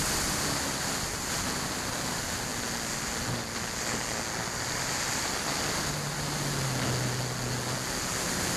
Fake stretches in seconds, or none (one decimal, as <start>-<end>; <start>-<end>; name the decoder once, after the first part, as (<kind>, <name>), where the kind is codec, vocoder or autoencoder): none